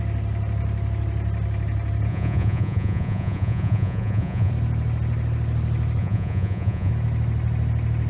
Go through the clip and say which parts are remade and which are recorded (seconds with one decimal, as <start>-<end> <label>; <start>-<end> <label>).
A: 0.0-2.1 recorded; 2.1-4.5 remade; 4.5-6.0 recorded; 6.0-6.9 remade; 6.9-8.1 recorded